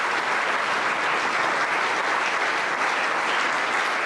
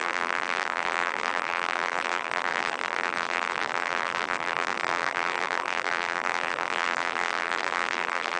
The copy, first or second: second